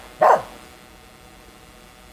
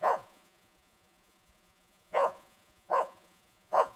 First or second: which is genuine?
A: first